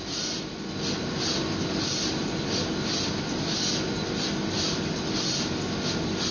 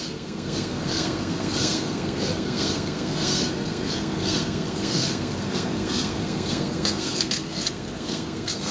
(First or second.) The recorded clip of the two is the first